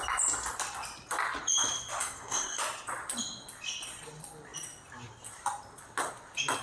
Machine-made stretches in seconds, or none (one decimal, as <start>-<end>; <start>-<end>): 2.0-2.6